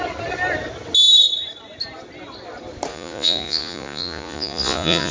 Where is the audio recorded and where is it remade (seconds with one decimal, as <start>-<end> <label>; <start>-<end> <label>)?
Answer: 0.0-2.9 recorded; 2.9-5.1 remade